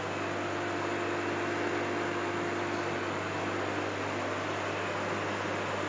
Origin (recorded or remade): recorded